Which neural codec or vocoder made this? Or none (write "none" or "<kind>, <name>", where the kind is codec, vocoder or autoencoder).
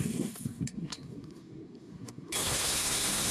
codec, SNAC